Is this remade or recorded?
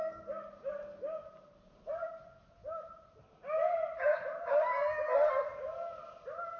recorded